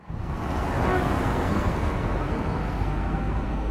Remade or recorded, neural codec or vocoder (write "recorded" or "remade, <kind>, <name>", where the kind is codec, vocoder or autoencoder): remade, codec, SNAC